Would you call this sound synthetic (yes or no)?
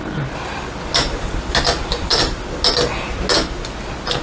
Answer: no